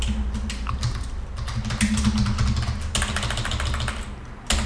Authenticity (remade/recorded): recorded